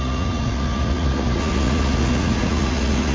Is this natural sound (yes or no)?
no